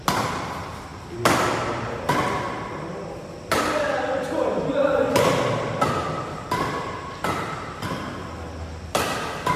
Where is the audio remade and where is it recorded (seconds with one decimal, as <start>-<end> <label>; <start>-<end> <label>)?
0.0-9.6 recorded